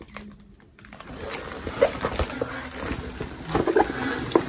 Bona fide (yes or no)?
yes